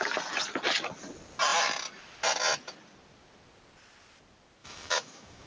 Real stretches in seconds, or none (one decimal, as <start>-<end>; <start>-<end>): 0.0-4.6